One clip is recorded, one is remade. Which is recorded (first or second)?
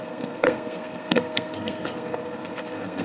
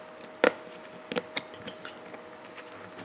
second